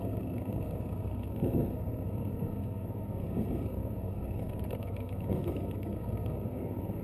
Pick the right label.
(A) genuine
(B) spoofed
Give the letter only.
B